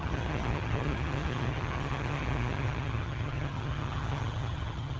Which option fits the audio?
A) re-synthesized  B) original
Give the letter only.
A